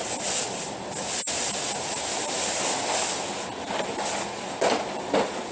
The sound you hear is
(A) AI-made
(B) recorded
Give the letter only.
B